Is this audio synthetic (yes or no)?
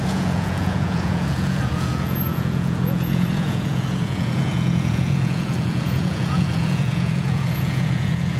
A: yes